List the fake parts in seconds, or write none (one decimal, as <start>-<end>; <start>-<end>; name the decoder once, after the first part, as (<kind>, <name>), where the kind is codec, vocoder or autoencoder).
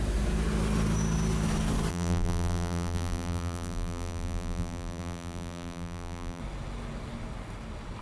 1.9-6.4 (vocoder, BigVGAN v2)